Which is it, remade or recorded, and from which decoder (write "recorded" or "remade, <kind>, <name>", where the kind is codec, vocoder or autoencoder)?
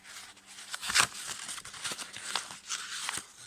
recorded